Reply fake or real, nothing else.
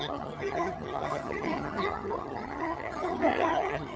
fake